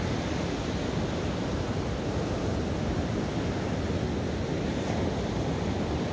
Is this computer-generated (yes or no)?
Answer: no